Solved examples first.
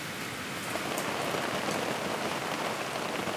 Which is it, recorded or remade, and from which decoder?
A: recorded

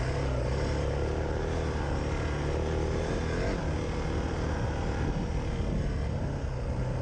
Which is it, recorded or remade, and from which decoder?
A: recorded